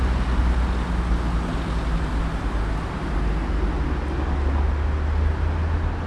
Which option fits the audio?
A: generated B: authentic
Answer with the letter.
B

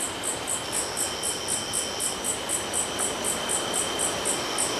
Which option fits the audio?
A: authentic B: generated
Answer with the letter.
A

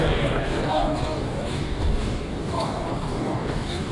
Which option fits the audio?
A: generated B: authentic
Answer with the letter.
A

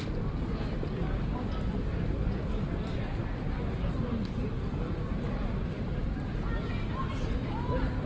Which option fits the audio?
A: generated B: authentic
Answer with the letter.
B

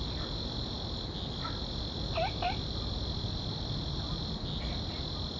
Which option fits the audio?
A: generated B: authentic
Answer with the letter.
B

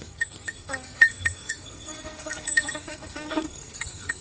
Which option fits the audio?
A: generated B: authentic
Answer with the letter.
A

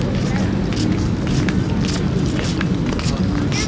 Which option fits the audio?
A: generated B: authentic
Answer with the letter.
B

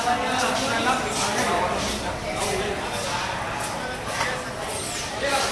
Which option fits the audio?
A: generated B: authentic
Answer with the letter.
B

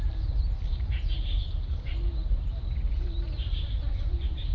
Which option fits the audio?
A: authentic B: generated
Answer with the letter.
B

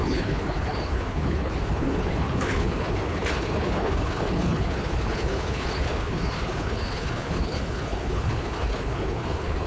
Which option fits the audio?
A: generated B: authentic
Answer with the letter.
A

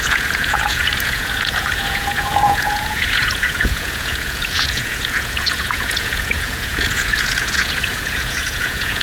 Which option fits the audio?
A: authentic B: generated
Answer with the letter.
B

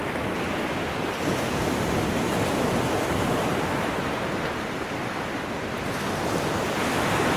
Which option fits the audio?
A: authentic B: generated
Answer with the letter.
A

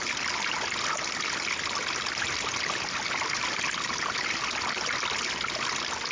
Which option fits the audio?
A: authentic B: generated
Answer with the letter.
A